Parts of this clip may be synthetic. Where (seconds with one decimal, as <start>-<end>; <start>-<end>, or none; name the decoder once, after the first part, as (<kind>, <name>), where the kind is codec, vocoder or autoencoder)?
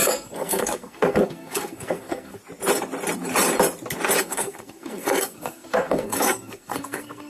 0.0-2.4 (codec, SNAC); 4.2-7.3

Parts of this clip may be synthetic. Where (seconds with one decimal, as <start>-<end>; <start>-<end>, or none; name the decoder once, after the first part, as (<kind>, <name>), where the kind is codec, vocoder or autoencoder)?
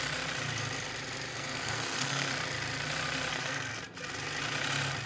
1.3-2.3 (codec, SNAC); 3.3-3.8